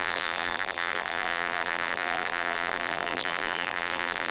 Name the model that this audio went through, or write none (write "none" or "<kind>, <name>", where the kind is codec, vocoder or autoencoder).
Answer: vocoder, BigVGAN v2